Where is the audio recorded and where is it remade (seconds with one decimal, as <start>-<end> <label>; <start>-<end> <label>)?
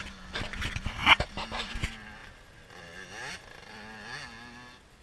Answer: 0.0-1.0 recorded; 1.0-1.7 remade; 1.7-5.0 recorded